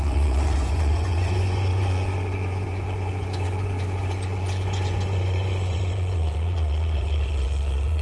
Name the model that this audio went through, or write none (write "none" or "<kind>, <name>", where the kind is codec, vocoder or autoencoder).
vocoder, Vocos